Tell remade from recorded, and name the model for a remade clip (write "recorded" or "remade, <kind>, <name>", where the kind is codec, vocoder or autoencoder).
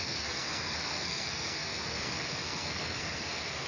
remade, codec, SNAC